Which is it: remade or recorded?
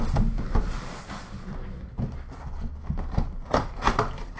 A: recorded